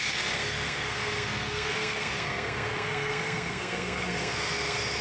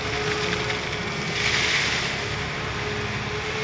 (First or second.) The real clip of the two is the second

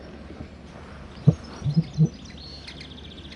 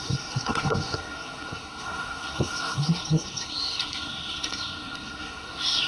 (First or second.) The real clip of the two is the first